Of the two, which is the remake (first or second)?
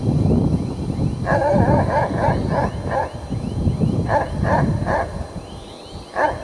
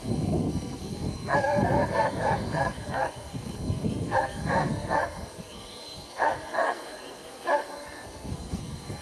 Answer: second